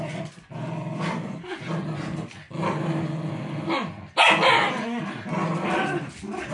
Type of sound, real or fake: real